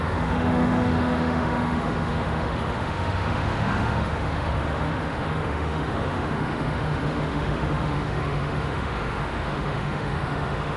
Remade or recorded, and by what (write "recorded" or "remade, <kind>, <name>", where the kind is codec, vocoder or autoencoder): remade, autoencoder, DAC-VAE